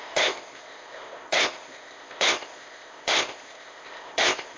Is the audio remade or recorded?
remade